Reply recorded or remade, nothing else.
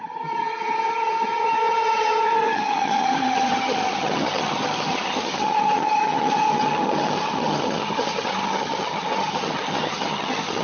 remade